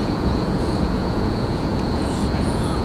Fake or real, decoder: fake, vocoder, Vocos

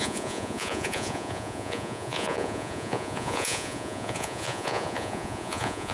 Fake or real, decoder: fake, vocoder, Vocos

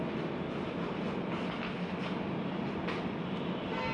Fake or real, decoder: real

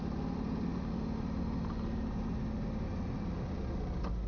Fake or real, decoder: real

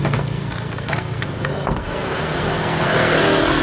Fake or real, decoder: fake, codec, SNAC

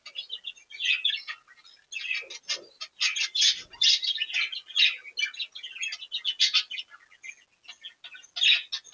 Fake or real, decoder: real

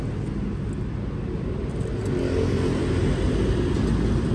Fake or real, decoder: real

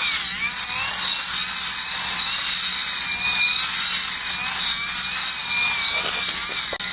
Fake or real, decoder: real